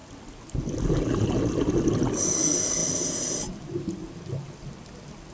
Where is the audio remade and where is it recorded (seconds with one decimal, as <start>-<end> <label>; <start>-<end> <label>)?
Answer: 0.0-5.3 recorded

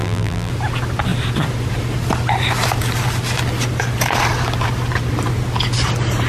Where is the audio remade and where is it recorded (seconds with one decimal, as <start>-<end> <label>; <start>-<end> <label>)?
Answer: 0.0-0.5 remade; 0.5-6.3 recorded

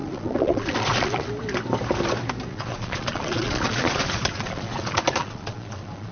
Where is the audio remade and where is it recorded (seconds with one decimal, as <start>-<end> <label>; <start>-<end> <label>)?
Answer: 0.0-1.3 remade; 1.3-2.5 recorded; 2.5-6.1 remade